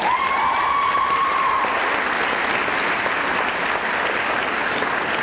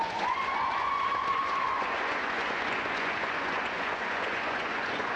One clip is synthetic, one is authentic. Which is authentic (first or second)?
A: first